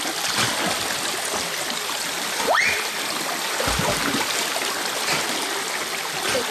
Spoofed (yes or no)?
no